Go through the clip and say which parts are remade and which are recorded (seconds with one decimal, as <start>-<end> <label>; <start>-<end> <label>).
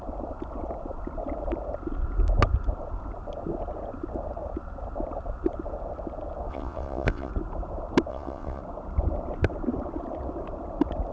0.0-6.5 recorded; 6.5-7.3 remade; 7.3-8.1 recorded; 8.1-8.6 remade; 8.6-11.1 recorded